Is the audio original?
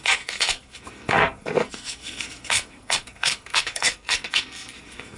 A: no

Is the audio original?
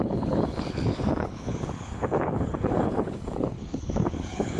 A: no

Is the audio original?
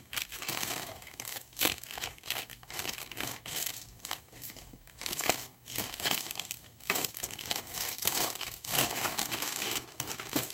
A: no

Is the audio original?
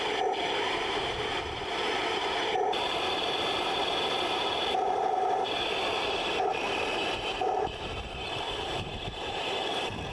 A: no